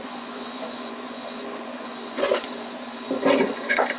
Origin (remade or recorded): remade